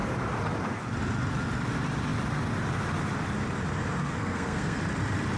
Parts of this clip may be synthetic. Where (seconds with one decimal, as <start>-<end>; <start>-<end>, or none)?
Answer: 4.0-4.8